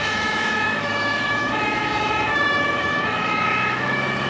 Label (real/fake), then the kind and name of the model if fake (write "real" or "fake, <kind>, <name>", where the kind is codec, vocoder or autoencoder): fake, autoencoder, DAC-VAE